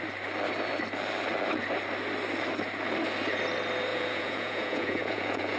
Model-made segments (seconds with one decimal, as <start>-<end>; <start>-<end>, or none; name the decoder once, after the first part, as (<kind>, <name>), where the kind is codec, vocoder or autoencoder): 3.9-5.6 (vocoder, Vocos)